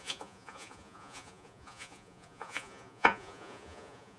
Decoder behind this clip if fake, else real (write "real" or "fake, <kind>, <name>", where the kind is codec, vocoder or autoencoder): fake, vocoder, Vocos